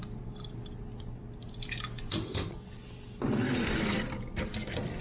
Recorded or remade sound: recorded